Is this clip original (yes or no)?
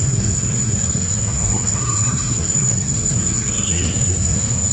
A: no